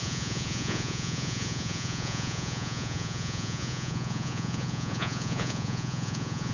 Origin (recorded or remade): remade